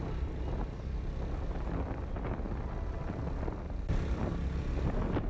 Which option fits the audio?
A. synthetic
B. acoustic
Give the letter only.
B